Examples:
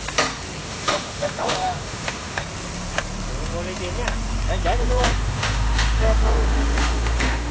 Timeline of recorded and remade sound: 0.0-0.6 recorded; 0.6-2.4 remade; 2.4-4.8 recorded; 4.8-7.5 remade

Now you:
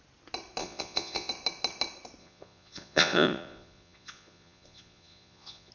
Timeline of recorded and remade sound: 0.0-0.6 recorded; 0.6-1.3 remade; 1.3-2.2 recorded; 2.2-5.7 remade

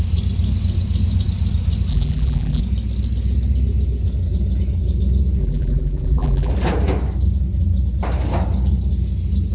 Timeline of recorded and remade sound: 0.0-1.9 recorded; 1.9-2.6 remade; 2.6-5.4 recorded; 5.4-6.5 remade; 6.5-9.5 recorded

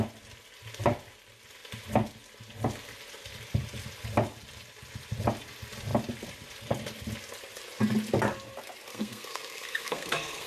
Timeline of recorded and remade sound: 0.0-8.9 recorded; 8.9-10.5 remade

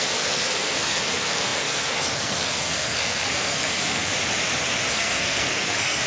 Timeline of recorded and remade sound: 0.0-4.1 remade; 4.1-4.9 recorded; 4.9-6.1 remade

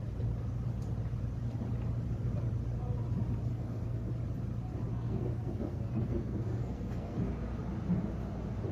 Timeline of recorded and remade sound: 0.0-3.5 recorded; 3.5-4.1 remade; 4.1-4.9 recorded; 4.9-7.2 remade; 7.2-8.7 recorded